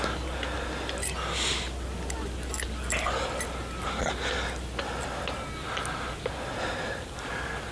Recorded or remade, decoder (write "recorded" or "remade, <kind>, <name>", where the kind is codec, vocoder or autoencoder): recorded